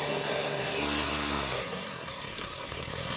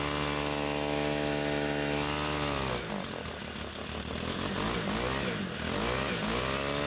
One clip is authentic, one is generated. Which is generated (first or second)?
first